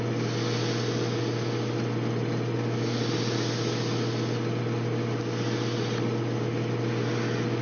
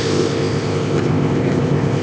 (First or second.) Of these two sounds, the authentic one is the first